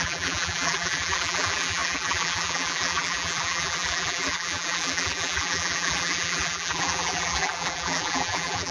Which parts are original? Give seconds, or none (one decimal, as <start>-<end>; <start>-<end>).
none